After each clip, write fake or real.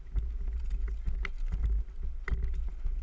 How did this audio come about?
real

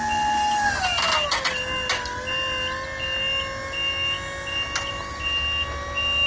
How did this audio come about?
real